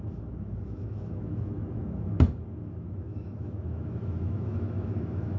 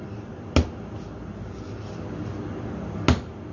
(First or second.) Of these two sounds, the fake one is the first